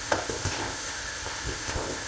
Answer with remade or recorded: remade